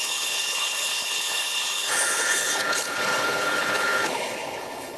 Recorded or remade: remade